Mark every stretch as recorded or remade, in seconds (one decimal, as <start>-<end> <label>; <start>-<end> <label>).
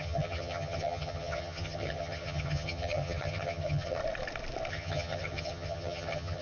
0.0-4.0 remade; 4.0-4.7 recorded; 4.7-6.4 remade